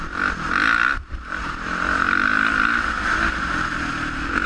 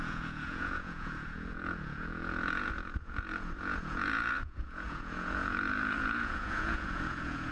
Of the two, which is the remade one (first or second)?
second